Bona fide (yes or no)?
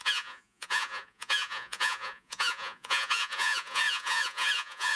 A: no